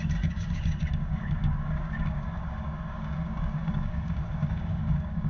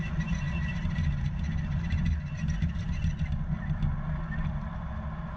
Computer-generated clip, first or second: first